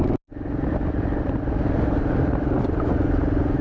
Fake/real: real